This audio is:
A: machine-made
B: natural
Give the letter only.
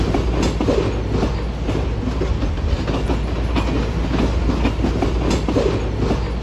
B